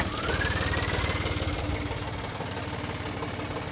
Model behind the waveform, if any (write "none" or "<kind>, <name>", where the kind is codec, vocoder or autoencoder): none